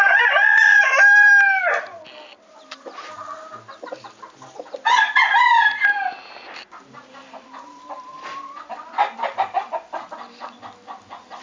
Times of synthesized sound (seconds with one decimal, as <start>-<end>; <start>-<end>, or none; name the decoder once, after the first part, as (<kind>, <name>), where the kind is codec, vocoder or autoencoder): 0.0-1.3 (vocoder, BigVGAN v2); 5.8-11.4